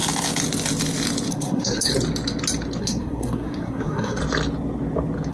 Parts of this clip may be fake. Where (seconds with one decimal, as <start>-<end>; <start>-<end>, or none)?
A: 1.3-1.9; 2.8-4.2